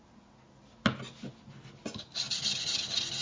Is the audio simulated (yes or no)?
no